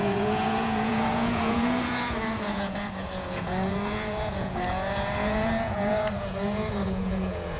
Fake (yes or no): yes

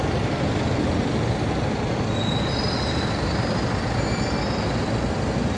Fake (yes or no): no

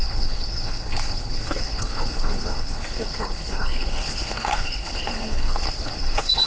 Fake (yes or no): yes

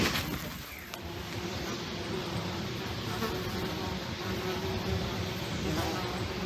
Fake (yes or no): no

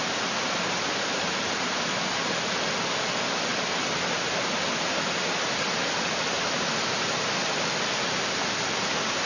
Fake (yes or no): no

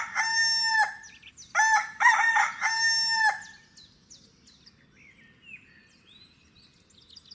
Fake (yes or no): no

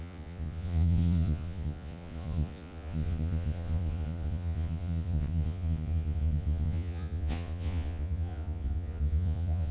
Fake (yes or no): yes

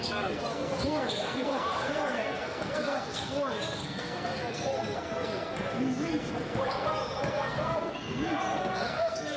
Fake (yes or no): yes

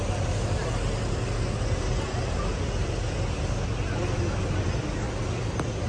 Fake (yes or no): no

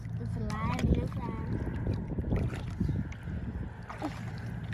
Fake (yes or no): no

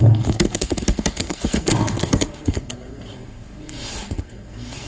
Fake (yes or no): yes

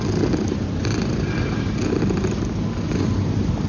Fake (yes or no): no